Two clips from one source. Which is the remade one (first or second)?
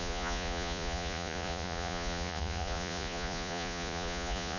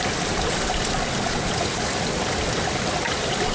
first